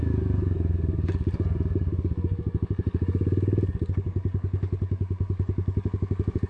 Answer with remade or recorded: remade